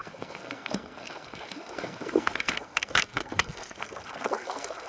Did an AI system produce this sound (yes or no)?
yes